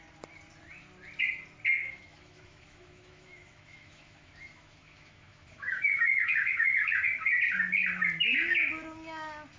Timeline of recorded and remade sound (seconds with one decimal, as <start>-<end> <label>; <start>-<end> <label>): 0.0-1.8 recorded; 1.8-6.9 remade; 6.9-9.6 recorded